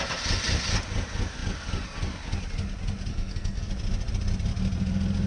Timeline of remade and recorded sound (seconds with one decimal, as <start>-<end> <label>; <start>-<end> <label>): 0.0-3.1 recorded; 3.1-3.7 remade; 3.7-5.3 recorded